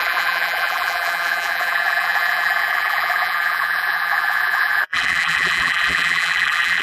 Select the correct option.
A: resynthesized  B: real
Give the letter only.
A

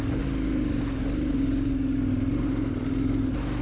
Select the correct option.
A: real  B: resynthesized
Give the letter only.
A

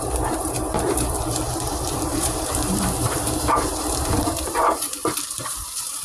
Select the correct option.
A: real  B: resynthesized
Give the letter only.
B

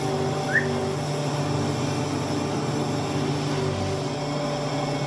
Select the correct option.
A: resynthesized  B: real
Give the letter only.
B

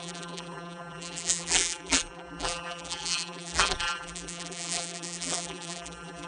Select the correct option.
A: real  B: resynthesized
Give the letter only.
B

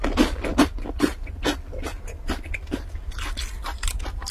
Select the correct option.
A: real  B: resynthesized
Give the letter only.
A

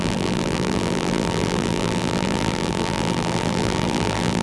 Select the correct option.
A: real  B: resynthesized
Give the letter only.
B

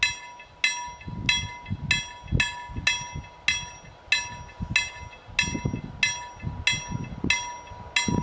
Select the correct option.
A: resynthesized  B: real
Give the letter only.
B